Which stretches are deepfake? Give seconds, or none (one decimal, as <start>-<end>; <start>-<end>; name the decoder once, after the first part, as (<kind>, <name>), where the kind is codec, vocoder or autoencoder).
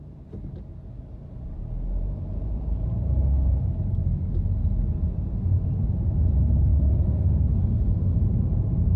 0.0-0.7 (vocoder, BigVGAN v2); 1.9-4.0; 6.1-6.7; 8.3-9.0